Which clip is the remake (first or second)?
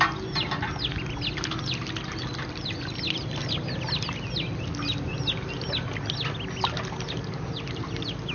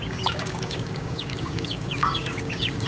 second